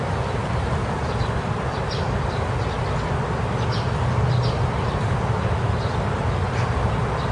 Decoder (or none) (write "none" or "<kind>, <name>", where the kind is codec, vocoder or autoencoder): none